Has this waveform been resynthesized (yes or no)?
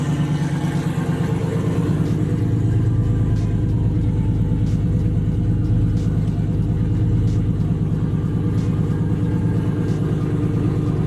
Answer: no